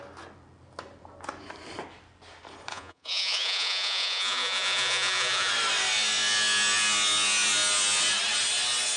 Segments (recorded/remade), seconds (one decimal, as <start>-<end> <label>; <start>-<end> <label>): 0.0-2.7 recorded; 2.7-5.5 remade; 5.5-9.0 recorded